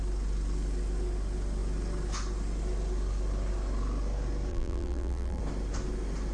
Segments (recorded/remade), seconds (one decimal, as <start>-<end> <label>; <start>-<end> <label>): 0.0-4.5 recorded; 4.5-5.4 remade; 5.4-6.3 recorded